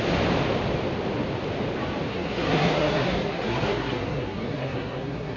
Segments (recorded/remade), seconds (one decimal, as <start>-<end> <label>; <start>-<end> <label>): 0.0-2.1 recorded; 2.1-5.4 remade

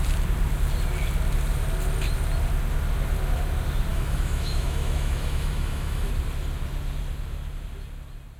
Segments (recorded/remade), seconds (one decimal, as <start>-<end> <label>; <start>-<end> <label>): 0.0-3.9 recorded; 3.9-6.1 remade; 6.1-8.4 recorded

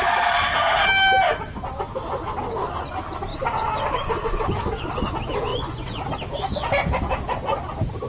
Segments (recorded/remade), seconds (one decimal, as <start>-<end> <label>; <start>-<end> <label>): 0.0-5.5 recorded; 5.5-6.0 remade; 6.0-8.1 recorded